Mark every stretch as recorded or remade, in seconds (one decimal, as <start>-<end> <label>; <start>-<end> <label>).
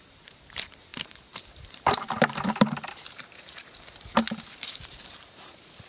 0.0-3.6 remade; 3.6-4.3 recorded; 4.3-5.9 remade